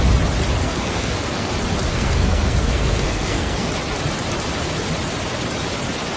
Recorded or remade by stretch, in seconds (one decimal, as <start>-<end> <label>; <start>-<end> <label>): 0.0-0.6 recorded; 0.6-1.5 remade; 1.5-1.9 recorded; 1.9-3.7 remade; 3.7-6.2 recorded